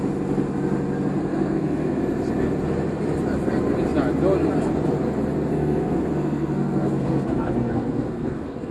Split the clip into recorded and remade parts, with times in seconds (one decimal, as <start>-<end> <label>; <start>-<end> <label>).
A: 0.0-1.2 recorded; 1.2-2.0 remade; 2.0-5.5 recorded; 5.5-8.7 remade